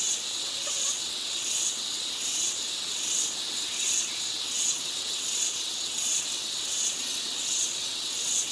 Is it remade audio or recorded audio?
remade